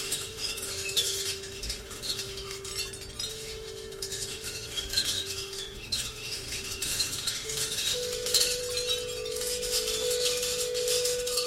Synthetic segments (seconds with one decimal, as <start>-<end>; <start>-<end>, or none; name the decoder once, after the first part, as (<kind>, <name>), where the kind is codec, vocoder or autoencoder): 0.0-2.7 (autoencoder, DAC-VAE); 3.3-8.6; 9.3-11.5